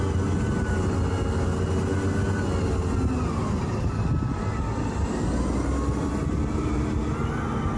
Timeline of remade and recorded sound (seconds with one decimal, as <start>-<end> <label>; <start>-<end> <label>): 0.0-7.8 recorded